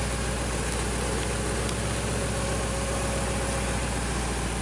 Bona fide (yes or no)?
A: yes